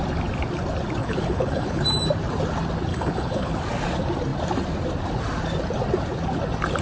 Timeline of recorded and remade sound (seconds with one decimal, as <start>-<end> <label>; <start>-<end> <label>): 0.0-1.0 recorded; 1.0-1.8 remade; 1.8-2.9 recorded; 2.9-3.5 remade; 3.5-6.8 recorded